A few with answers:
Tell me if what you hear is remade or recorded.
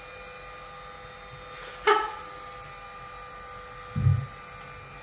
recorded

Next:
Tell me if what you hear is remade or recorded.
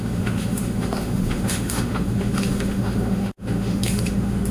remade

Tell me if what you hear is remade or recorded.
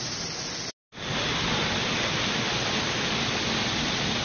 recorded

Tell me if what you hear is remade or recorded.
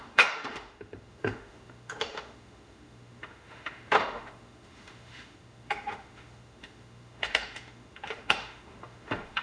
remade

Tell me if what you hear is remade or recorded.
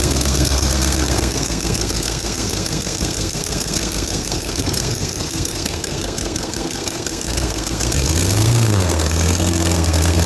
remade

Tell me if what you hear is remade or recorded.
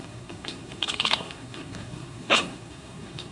remade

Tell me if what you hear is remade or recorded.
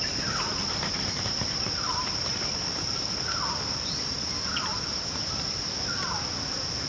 recorded